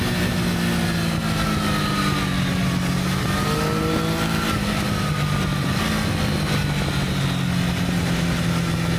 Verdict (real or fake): real